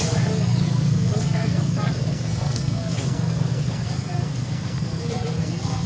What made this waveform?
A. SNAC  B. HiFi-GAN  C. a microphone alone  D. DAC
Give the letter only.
A